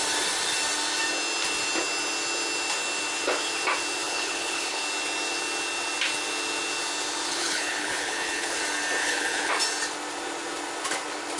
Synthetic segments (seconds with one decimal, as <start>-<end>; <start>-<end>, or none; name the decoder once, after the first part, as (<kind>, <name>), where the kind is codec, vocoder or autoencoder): 4.0-4.8 (codec, HILCodec); 7.3-8.6; 9.0-9.5